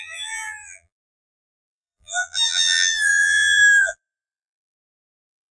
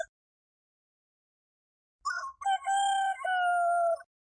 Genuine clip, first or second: second